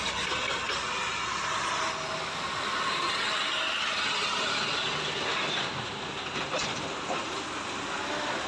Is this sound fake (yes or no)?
no